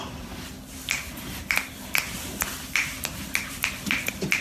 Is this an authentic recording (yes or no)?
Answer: no